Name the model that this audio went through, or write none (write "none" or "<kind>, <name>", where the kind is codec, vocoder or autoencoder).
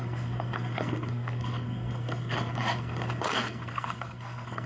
codec, SNAC